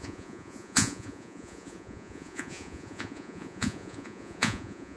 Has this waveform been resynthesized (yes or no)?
yes